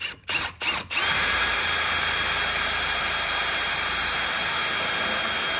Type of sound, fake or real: fake